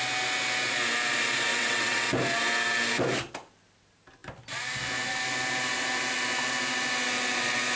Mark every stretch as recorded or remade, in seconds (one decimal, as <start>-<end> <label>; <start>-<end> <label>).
0.0-1.5 recorded; 1.5-2.1 remade; 2.1-7.8 recorded